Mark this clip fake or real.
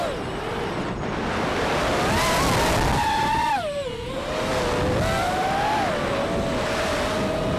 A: real